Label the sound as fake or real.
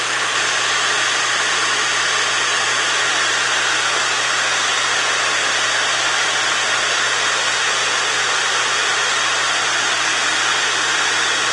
real